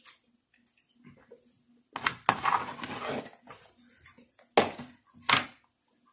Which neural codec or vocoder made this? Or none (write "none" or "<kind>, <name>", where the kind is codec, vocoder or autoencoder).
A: none